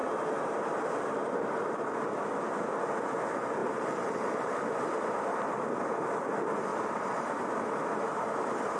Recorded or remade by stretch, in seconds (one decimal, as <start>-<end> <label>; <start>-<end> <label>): 0.0-0.7 remade; 0.7-3.6 recorded; 3.6-4.6 remade; 4.6-6.7 recorded; 6.7-7.5 remade; 7.5-8.8 recorded